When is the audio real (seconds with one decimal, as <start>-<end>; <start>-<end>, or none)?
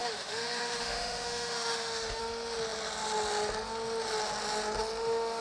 2.2-5.4